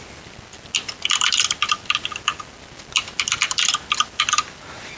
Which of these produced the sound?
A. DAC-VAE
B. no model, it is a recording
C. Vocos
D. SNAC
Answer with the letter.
B